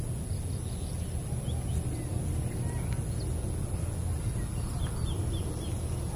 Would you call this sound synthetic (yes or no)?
no